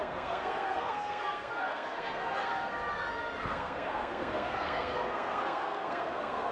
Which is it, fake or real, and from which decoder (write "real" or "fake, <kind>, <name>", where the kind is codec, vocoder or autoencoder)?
fake, codec, SNAC